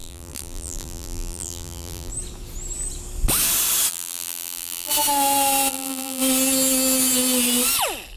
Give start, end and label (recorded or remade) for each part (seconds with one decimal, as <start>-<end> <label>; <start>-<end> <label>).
0.0-2.1 remade; 2.1-3.9 recorded; 3.9-4.9 remade; 4.9-5.7 recorded; 5.7-6.2 remade; 6.2-8.2 recorded